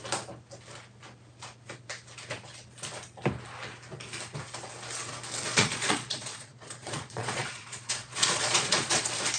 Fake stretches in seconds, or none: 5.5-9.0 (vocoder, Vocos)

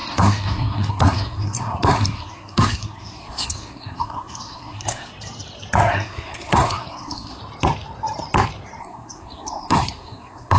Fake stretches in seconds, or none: 0.0-5.1 (codec, SNAC); 5.9-7.4; 8.8-10.6

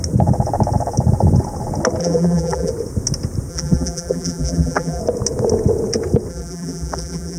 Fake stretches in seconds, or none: 2.0-2.7 (vocoder, BigVGAN v2); 3.5-5.0; 6.3-7.4